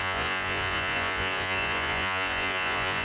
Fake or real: fake